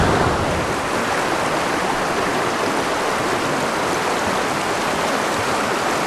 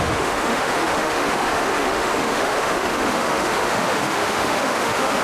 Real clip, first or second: first